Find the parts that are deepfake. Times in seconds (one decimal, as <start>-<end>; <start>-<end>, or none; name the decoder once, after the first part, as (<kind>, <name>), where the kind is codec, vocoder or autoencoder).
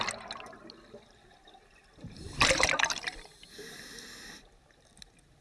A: none